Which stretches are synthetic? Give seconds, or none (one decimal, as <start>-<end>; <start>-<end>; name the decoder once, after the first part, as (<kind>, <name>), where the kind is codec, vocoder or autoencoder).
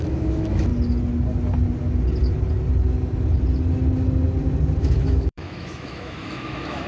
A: 0.0-0.7 (autoencoder, DAC-VAE); 4.8-6.9